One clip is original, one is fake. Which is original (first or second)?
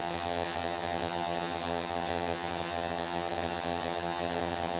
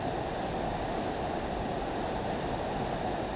second